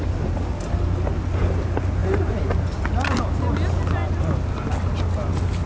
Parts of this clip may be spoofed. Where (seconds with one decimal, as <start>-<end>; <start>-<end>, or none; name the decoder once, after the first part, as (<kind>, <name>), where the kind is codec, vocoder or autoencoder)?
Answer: none